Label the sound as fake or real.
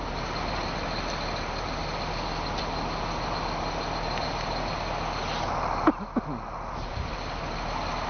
real